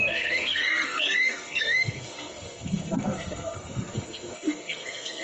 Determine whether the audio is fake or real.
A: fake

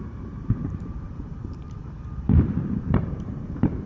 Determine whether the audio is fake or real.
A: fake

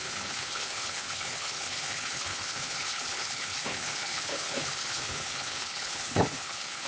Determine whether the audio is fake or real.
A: fake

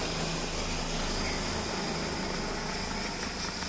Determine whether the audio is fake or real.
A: real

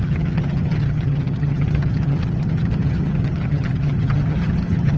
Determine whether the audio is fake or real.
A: fake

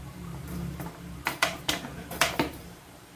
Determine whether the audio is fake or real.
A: fake